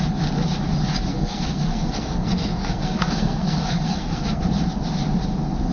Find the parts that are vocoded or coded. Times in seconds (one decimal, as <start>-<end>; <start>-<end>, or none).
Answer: 1.1-4.4